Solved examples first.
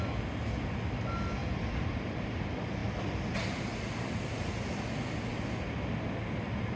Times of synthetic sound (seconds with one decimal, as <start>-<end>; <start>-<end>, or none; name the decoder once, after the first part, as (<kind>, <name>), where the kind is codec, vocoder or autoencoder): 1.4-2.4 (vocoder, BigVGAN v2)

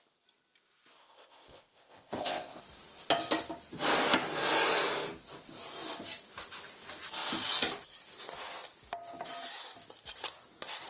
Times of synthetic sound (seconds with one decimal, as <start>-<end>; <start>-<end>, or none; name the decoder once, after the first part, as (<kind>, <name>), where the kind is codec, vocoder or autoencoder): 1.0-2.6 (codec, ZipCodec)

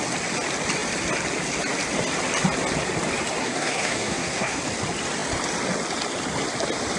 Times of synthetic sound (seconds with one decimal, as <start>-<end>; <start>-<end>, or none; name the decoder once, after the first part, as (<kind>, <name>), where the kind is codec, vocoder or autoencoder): 3.4-4.6 (codec, SNAC)